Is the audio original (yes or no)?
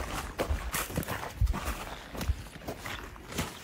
yes